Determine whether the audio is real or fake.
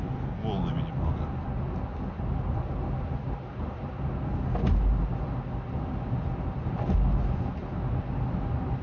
real